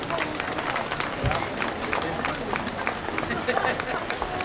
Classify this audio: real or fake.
real